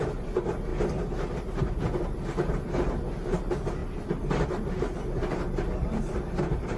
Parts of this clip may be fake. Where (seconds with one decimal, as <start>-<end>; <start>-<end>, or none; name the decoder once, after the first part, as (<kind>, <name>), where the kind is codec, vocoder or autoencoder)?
0.0-0.7 (vocoder, BigVGAN v2); 1.6-6.8